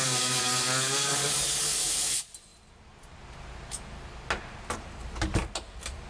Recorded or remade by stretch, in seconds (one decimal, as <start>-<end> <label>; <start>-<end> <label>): 0.0-2.1 remade; 2.1-6.1 recorded